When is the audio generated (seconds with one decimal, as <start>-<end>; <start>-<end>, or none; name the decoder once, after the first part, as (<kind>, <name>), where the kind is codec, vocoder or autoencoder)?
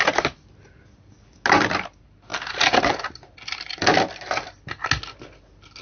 none